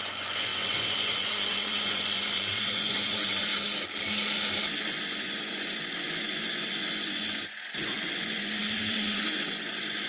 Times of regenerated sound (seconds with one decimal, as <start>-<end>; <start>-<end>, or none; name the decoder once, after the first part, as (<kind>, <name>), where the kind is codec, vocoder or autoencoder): 0.0-3.5 (vocoder, Vocos); 4.7-10.1